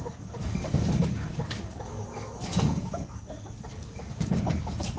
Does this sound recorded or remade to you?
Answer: remade